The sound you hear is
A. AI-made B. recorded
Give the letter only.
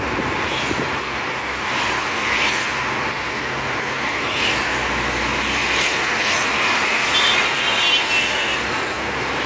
B